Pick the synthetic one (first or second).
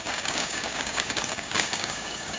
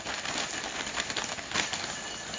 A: first